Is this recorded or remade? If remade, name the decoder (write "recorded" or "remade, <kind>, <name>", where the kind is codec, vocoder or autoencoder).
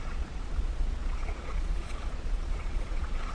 remade, vocoder, Vocos